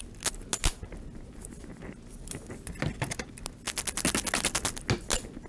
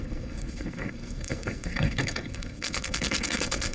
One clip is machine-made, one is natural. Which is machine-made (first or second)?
second